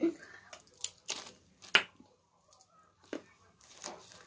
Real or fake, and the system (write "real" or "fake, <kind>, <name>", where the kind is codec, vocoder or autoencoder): real